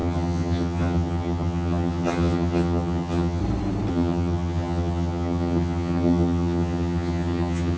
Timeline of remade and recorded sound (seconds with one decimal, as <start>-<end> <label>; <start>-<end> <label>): 0.0-3.4 remade; 3.4-3.9 recorded; 3.9-7.8 remade